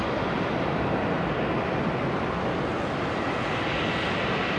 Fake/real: real